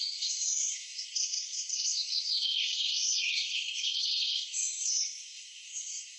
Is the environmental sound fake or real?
fake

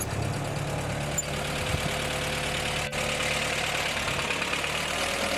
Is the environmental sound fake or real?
real